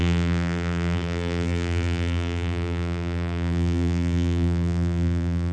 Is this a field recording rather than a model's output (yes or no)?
no